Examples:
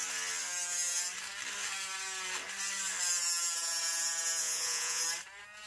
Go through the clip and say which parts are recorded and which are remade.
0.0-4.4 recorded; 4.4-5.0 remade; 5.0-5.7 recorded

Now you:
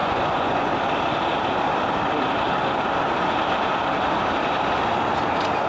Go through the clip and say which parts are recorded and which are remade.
0.0-0.7 remade; 0.7-5.7 recorded

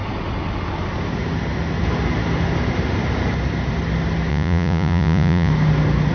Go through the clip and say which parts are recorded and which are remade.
0.0-4.3 recorded; 4.3-5.5 remade; 5.5-6.1 recorded